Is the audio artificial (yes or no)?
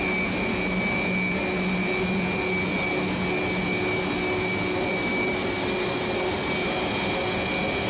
no